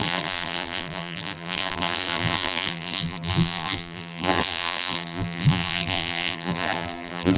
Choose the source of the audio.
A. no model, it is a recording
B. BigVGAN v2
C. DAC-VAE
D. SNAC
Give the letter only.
B